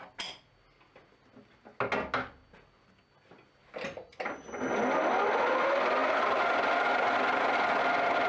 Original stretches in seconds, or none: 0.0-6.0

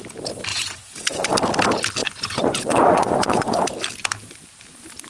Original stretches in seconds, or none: 0.0-0.5; 1.3-2.0; 3.6-5.1

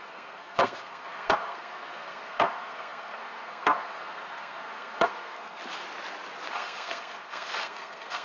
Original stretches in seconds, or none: 5.6-6.5

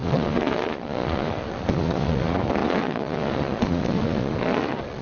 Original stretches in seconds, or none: none